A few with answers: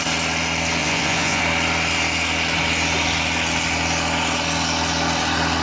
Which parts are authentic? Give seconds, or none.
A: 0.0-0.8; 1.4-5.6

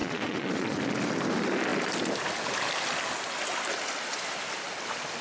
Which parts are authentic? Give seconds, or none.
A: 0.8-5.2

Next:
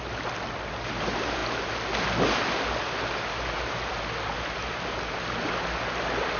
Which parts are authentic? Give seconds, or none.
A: 0.0-6.4

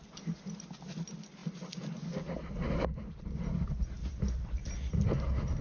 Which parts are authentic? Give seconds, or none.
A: 0.0-5.6

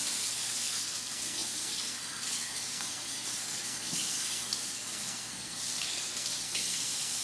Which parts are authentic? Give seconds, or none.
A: none

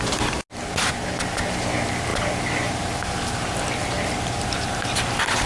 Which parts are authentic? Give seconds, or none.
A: 0.0-5.5

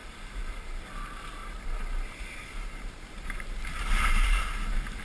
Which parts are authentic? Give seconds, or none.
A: 0.8-1.4; 4.4-5.0